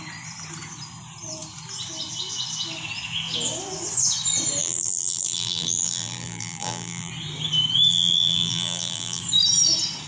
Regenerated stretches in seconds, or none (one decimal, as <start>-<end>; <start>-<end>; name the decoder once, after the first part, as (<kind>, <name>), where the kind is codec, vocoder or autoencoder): 4.6-7.1 (vocoder, BigVGAN v2); 7.9-9.2